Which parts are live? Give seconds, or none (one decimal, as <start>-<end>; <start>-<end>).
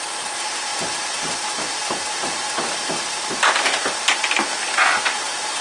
0.0-5.6